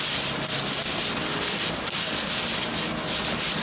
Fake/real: real